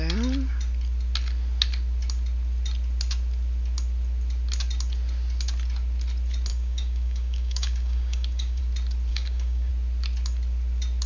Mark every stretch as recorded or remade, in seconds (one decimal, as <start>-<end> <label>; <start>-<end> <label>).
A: 0.0-6.5 recorded; 6.5-8.6 remade; 8.6-9.1 recorded; 9.1-9.7 remade; 9.7-11.1 recorded